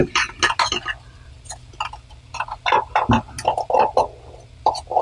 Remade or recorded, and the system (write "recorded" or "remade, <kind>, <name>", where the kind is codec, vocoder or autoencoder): recorded